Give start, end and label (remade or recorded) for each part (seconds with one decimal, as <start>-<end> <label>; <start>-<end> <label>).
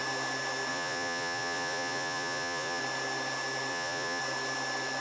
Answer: 0.0-0.7 recorded; 0.7-2.8 remade; 2.8-3.7 recorded; 3.7-4.2 remade; 4.2-5.0 recorded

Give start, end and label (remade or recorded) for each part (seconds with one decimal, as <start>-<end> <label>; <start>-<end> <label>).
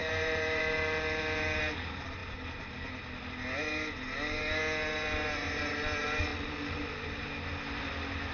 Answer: 0.0-0.6 remade; 0.6-8.3 recorded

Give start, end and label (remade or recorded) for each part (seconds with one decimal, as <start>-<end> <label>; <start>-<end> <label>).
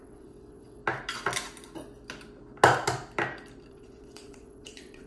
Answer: 0.0-0.8 remade; 0.8-3.7 recorded; 3.7-5.1 remade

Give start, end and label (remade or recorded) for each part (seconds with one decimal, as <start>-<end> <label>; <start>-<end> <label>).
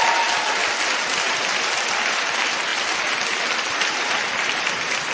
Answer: 0.0-5.1 recorded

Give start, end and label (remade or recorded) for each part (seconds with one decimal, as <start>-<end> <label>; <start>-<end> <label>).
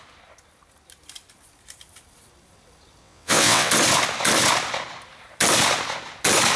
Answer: 0.0-3.0 recorded; 3.0-3.7 remade; 3.7-6.6 recorded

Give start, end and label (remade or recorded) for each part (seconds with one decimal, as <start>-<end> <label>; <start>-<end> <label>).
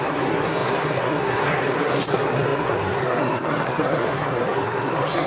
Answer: 0.0-5.3 remade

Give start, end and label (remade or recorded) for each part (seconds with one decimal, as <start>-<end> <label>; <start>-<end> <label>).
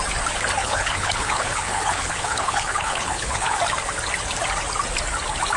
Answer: 0.0-0.6 recorded; 0.6-3.6 remade; 3.6-5.6 recorded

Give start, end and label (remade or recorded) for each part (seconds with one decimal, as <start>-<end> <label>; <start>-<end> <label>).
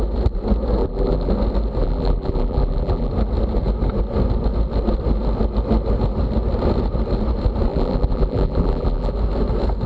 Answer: 0.0-0.8 recorded; 0.8-1.3 remade; 1.3-1.8 recorded; 1.8-3.1 remade; 3.1-7.7 recorded; 7.7-9.1 remade; 9.1-9.9 recorded